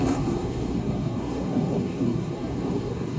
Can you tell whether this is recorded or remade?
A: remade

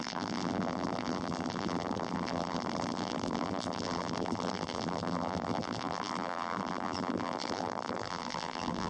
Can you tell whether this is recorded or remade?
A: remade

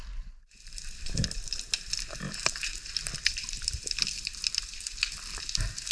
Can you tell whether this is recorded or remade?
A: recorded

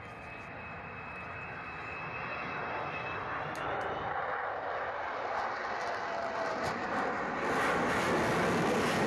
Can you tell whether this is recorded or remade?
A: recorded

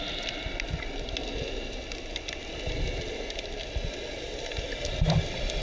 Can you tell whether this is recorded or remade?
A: recorded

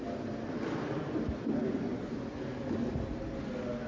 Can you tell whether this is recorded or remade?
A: recorded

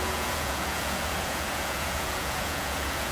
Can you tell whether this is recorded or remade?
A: remade